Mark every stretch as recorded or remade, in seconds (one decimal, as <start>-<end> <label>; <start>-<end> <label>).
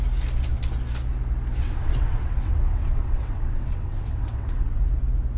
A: 0.0-1.6 recorded; 1.6-4.8 remade; 4.8-5.4 recorded